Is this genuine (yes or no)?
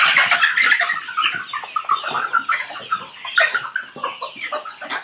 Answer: yes